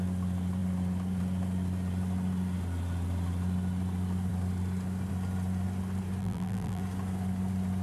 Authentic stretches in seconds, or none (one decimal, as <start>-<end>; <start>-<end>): 0.0-6.2; 6.8-7.8